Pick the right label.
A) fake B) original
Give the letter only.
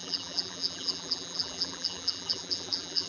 A